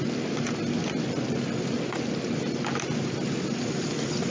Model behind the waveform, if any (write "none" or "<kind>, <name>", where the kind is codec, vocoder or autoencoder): none